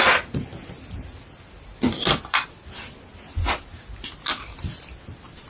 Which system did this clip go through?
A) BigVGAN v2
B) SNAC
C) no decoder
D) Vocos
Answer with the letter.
C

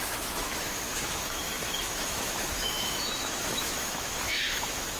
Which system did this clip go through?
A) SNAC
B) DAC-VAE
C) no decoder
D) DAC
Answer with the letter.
B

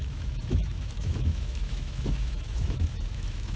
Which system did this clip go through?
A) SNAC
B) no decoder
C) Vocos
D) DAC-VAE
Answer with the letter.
D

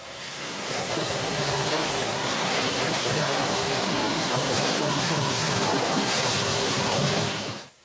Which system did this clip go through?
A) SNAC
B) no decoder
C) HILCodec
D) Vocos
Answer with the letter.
A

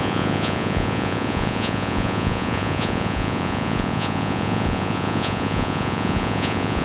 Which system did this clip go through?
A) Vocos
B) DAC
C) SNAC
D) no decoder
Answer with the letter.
A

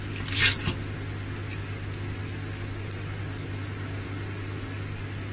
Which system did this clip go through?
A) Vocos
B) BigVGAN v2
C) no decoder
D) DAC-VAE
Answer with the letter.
C